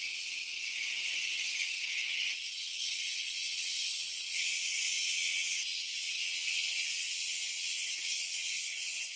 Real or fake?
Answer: fake